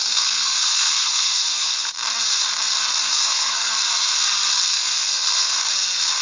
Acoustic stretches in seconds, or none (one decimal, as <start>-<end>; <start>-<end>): 1.9-3.0; 3.7-4.7; 5.6-6.2